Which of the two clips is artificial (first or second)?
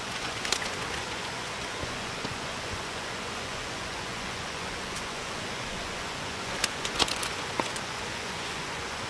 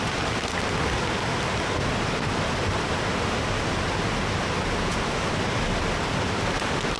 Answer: first